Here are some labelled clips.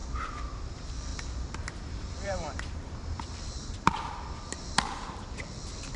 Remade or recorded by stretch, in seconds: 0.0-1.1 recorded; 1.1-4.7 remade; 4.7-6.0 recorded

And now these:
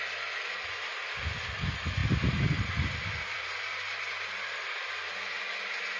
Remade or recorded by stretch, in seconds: 0.0-2.0 recorded; 2.0-5.1 remade; 5.1-6.0 recorded

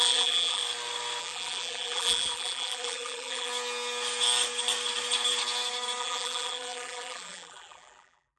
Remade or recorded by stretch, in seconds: 0.0-0.6 remade; 0.6-1.2 recorded; 1.2-3.5 remade; 3.5-6.0 recorded; 6.0-8.4 remade

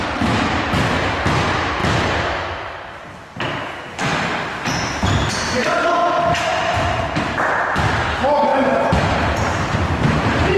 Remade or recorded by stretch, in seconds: 0.0-1.8 remade; 1.8-5.4 recorded; 5.4-6.0 remade; 6.0-7.0 recorded; 7.0-8.5 remade; 8.5-9.1 recorded; 9.1-10.6 remade

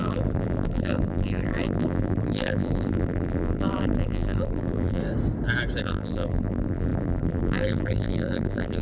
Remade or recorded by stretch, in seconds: 0.0-5.0 remade; 5.0-5.8 recorded; 5.8-8.8 remade

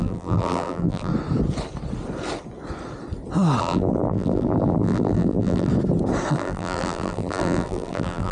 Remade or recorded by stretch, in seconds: 0.0-1.1 remade; 1.1-3.6 recorded; 3.6-5.7 remade; 5.7-6.3 recorded; 6.3-8.3 remade

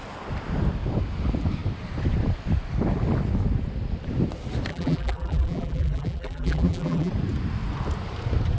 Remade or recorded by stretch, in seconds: 0.0-4.7 recorded; 4.7-7.1 remade; 7.1-8.6 recorded